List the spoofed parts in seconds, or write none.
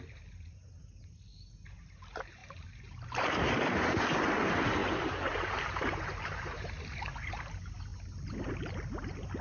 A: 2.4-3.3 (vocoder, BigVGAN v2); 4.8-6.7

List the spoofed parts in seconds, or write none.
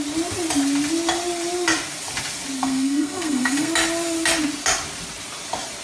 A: 2.6-3.7 (codec, SNAC)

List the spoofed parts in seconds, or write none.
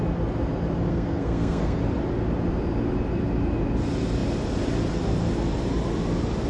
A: 0.9-1.8 (codec, SNAC)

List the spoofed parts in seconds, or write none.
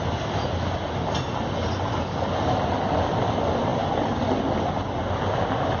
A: none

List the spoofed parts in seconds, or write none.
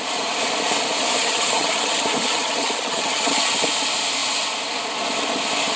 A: 1.2-3.5 (vocoder, HiFi-GAN)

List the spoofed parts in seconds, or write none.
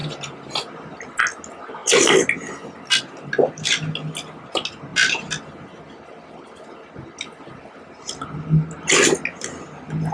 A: none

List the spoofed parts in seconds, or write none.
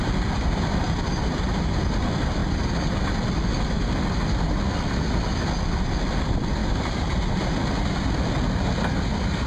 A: 6.6-7.7 (vocoder, BigVGAN v2)